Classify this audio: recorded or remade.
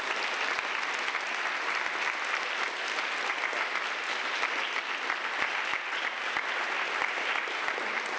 recorded